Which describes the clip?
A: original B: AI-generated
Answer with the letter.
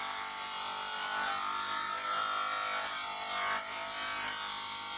A